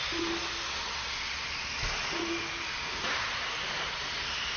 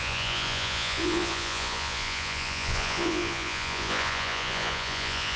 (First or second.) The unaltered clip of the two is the first